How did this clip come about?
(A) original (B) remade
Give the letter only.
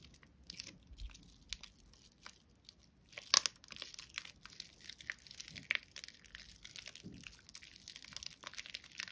A